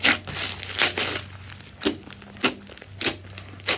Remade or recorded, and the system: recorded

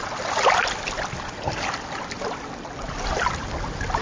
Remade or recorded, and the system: recorded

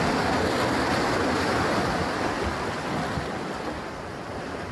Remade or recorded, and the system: recorded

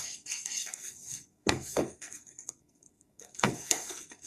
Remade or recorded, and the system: remade, codec, SNAC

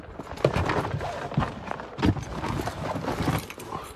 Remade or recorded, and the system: recorded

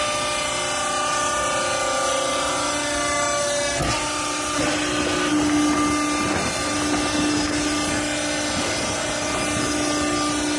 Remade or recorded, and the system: recorded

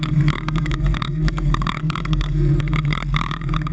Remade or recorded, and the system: remade, codec, SNAC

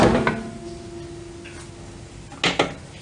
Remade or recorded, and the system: recorded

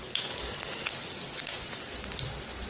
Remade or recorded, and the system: recorded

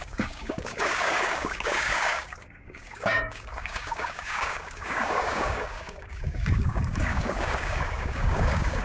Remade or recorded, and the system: remade, codec, DAC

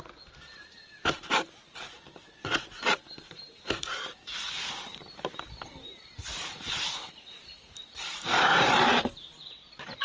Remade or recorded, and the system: remade, vocoder, BigVGAN v2